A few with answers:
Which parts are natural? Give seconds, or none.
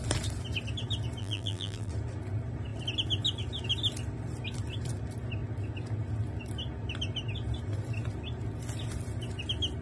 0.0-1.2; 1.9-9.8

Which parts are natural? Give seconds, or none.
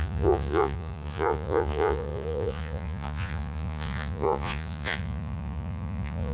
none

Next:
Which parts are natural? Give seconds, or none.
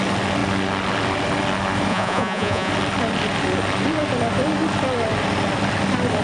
0.0-1.9; 2.7-6.2